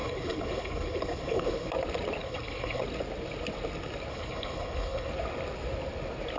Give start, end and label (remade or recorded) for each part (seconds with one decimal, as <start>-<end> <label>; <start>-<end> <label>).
0.0-1.7 remade; 1.7-2.2 recorded; 2.2-2.8 remade; 2.8-4.1 recorded; 4.1-5.1 remade; 5.1-6.4 recorded